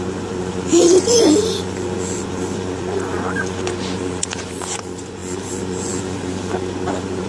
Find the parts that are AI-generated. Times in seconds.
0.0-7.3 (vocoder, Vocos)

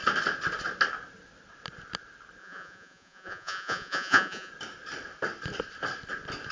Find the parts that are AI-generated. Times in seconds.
2.4-4.5 (vocoder, Vocos)

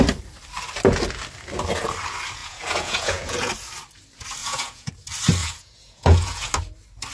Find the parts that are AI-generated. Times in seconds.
2.4-3.5 (vocoder, Vocos); 4.4-4.9; 5.4-6.5